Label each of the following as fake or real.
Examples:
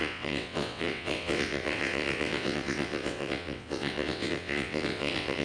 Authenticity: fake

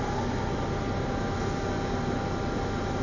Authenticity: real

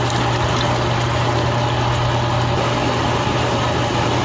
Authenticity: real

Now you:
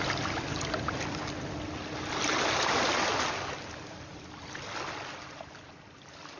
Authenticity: real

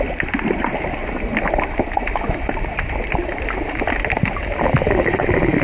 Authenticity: real